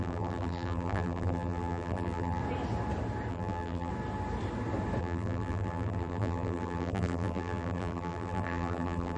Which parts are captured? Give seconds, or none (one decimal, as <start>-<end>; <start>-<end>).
2.4-3.3; 3.9-5.0